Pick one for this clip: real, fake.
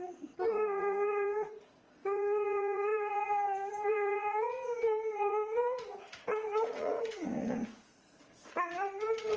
fake